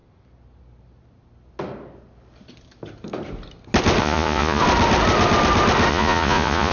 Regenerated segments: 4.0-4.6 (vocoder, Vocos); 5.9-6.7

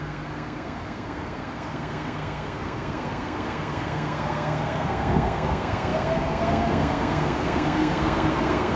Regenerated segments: 0.0-8.8 (codec, SNAC)